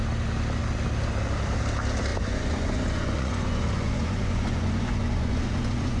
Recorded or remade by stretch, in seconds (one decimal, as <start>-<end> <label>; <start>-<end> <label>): 0.0-2.1 recorded; 2.1-6.0 remade

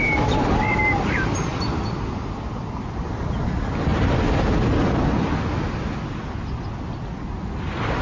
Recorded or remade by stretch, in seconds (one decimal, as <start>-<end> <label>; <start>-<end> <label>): 0.0-8.0 recorded

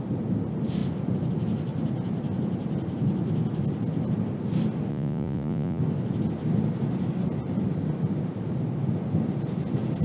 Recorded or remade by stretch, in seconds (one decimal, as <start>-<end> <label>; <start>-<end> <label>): 0.0-4.9 recorded; 4.9-5.8 remade; 5.8-10.0 recorded

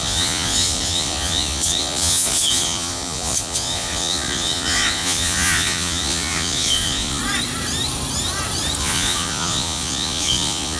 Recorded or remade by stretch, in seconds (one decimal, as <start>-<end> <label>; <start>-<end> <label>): 0.0-7.2 remade; 7.2-8.8 recorded; 8.8-10.8 remade

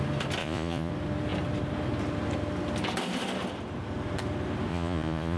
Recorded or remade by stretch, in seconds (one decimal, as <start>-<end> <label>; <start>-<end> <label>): 0.0-0.4 recorded; 0.4-0.9 remade; 0.9-4.7 recorded; 4.7-5.4 remade